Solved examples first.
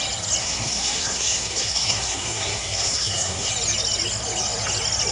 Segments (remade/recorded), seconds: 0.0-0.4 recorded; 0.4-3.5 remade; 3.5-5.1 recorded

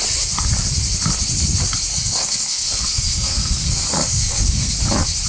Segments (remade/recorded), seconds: 0.0-1.9 recorded; 1.9-4.7 remade; 4.7-5.3 recorded

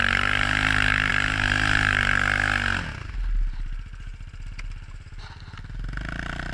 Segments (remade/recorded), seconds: 0.0-6.5 recorded

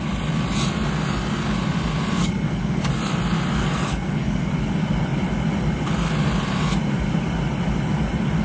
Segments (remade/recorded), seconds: 0.0-2.2 recorded; 2.2-2.9 remade; 2.9-3.6 recorded; 3.6-4.5 remade; 4.5-8.4 recorded

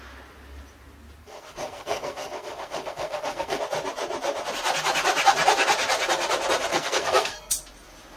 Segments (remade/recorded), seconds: 0.0-1.2 recorded; 1.2-3.6 remade; 3.6-6.7 recorded; 6.7-7.5 remade; 7.5-8.2 recorded

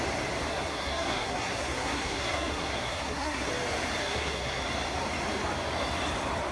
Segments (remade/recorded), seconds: 0.0-0.5 recorded; 0.5-3.5 remade; 3.5-4.0 recorded; 4.0-4.6 remade; 4.6-6.5 recorded